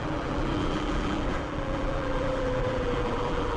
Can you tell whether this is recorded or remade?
remade